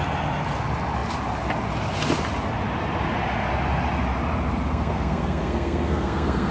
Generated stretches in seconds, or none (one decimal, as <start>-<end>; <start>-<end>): 4.7-6.5